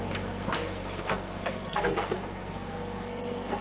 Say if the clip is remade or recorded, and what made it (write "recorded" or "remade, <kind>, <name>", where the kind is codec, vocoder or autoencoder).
remade, codec, SNAC